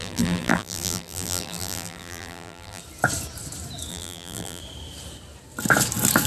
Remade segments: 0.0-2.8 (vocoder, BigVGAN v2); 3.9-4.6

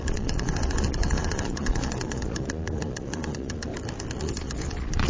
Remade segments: 0.0-3.7 (vocoder, Vocos); 4.3-5.1

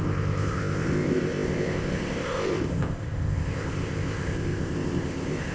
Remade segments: 0.0-5.5 (codec, ZipCodec)

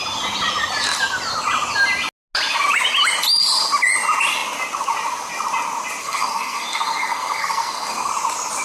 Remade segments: 6.0-8.1 (codec, SNAC)

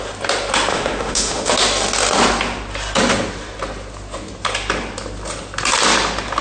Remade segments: 0.7-1.5 (autoencoder, DAC-VAE)

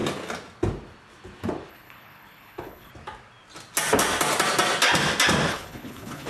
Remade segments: 1.7-2.9 (codec, HILCodec); 5.5-6.3